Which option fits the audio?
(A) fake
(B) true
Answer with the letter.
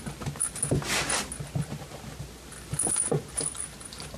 B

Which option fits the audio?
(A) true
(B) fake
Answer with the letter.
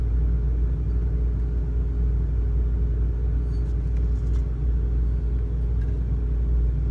A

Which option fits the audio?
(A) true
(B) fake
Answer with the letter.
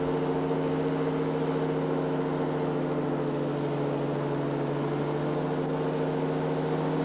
A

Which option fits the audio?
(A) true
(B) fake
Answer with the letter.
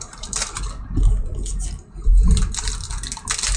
A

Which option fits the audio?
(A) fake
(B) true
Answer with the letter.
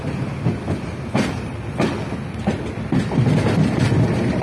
B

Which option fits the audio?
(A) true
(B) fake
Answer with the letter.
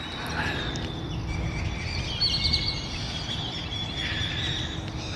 A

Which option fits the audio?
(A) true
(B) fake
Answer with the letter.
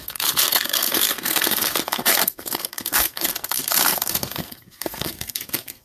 B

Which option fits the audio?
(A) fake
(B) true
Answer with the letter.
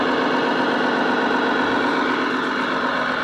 B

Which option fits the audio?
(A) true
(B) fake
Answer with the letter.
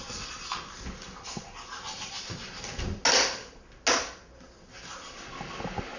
A